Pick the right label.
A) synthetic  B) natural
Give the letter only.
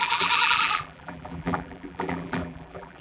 A